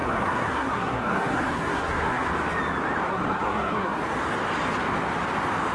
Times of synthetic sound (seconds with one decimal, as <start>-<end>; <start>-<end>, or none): 0.0-2.3; 3.1-4.0